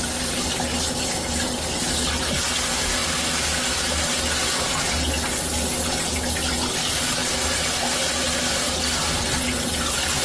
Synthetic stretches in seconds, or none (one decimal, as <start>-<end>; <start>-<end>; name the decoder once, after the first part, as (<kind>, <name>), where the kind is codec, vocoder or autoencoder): none